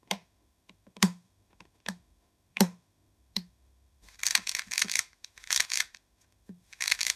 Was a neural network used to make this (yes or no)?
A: yes